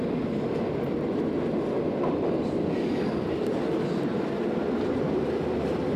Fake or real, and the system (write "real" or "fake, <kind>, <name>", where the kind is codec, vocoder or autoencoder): real